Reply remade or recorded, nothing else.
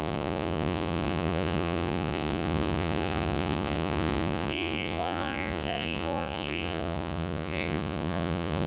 remade